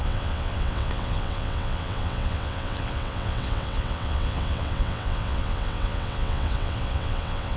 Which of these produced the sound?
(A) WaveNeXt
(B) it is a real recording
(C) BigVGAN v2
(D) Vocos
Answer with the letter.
A